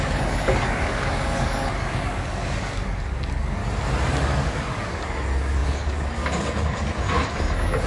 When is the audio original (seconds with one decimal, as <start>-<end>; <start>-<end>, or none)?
3.6-4.1